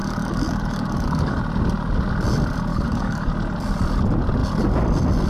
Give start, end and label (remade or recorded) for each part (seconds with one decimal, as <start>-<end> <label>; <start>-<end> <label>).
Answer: 0.0-1.4 remade; 1.4-2.7 recorded; 2.7-3.3 remade; 3.3-5.3 recorded